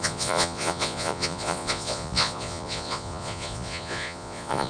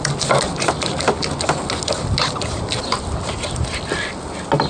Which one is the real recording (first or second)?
second